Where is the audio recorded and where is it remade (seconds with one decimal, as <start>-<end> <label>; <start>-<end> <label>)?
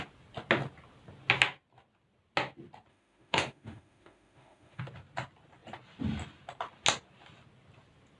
0.0-2.9 recorded; 2.9-4.8 remade; 4.8-8.2 recorded